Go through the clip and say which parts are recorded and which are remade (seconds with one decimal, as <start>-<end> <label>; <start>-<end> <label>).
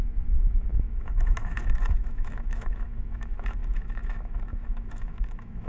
0.0-5.7 remade